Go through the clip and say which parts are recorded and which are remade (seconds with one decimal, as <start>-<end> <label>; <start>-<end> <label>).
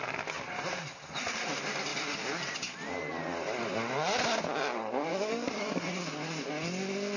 0.0-5.1 recorded; 5.1-6.0 remade; 6.0-7.2 recorded